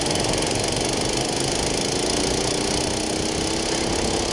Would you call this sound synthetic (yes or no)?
no